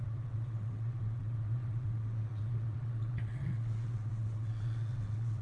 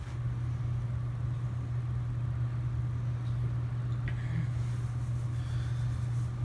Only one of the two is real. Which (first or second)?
second